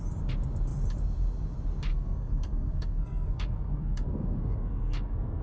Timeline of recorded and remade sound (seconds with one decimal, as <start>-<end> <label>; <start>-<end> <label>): 0.0-1.9 recorded; 1.9-5.4 remade